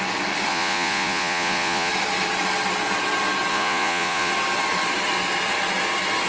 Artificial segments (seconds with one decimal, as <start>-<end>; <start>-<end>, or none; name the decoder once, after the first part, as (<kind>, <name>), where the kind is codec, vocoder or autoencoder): 0.5-1.9 (vocoder, Vocos); 3.5-4.3